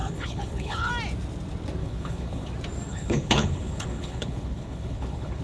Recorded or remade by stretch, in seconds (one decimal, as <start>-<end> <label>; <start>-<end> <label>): 0.0-0.9 remade; 0.9-1.8 recorded; 1.8-2.5 remade; 2.5-2.9 recorded; 2.9-5.4 remade